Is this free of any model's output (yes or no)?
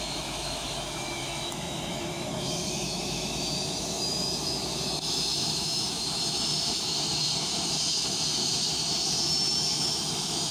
no